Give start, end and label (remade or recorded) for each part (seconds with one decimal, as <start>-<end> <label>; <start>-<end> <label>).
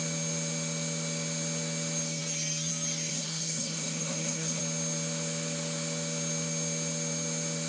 0.0-3.1 recorded; 3.1-4.6 remade; 4.6-7.7 recorded